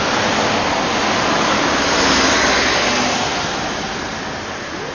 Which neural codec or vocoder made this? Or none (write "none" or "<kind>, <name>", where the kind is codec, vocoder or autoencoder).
none